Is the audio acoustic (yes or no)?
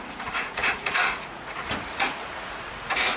no